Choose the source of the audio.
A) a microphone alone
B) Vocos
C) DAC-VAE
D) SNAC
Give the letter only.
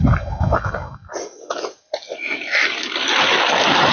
A